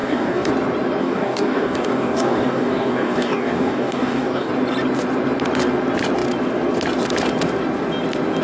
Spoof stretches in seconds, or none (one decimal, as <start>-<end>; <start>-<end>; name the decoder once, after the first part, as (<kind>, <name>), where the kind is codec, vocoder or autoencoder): 0.0-0.5 (codec, DAC); 1.0-4.5